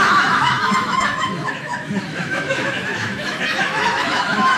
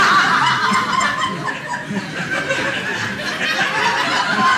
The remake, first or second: first